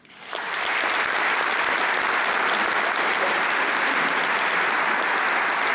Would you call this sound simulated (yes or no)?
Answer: no